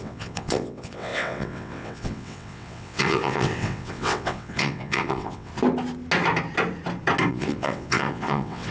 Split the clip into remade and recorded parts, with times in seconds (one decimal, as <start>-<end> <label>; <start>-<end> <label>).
0.0-5.5 remade; 5.5-7.3 recorded; 7.3-8.7 remade